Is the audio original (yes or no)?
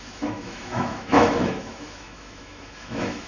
no